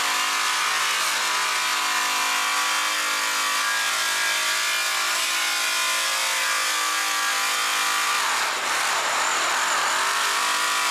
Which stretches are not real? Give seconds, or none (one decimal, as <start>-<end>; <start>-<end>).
7.8-10.9